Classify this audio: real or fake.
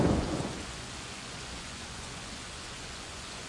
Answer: fake